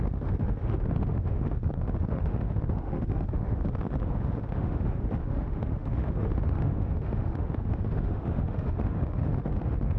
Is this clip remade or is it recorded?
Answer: remade